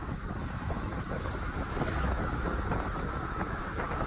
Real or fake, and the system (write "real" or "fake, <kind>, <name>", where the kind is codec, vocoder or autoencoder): fake, autoencoder, DAC-VAE